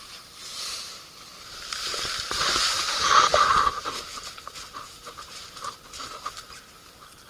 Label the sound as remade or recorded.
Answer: remade